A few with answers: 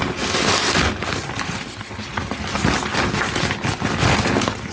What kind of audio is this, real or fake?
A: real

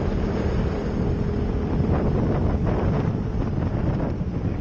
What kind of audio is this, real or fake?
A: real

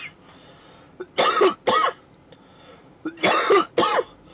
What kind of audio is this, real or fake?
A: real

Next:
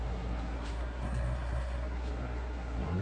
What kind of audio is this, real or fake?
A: fake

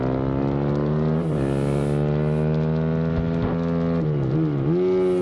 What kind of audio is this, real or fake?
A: real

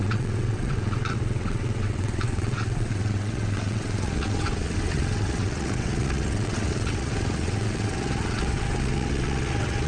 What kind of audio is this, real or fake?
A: fake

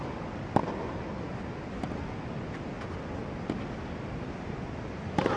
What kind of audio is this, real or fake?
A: real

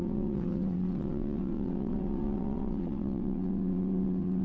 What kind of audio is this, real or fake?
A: fake